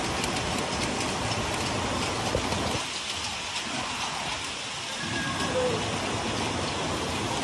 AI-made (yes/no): no